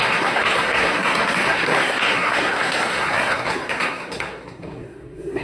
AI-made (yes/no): yes